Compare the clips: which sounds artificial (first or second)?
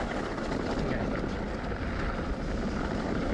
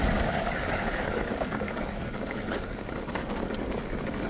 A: second